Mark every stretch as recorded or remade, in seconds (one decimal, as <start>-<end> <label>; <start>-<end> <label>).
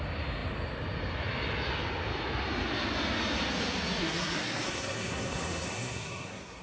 0.0-4.0 recorded; 4.0-6.6 remade